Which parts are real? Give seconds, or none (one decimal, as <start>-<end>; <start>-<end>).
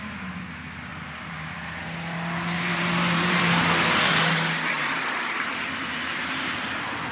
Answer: 0.0-0.9; 1.8-2.7; 3.4-7.1